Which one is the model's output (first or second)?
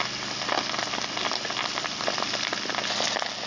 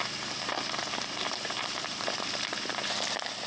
second